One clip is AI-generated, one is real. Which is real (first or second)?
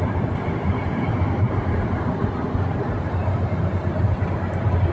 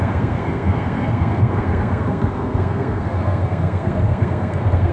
first